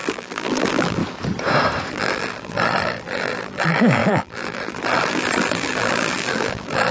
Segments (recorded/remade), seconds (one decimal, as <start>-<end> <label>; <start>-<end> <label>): 0.0-1.0 remade; 1.0-1.9 recorded; 1.9-6.9 remade